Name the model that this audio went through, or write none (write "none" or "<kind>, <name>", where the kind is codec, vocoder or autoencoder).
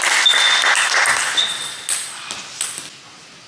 none